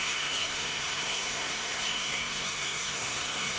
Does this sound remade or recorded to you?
remade